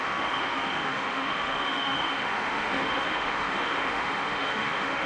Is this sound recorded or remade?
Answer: remade